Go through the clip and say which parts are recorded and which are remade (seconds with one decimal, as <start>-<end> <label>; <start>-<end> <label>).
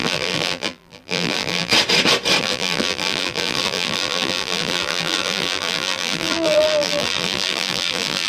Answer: 0.0-1.7 remade; 1.7-2.4 recorded; 2.4-8.3 remade